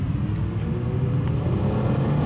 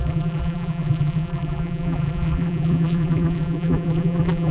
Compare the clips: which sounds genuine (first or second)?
first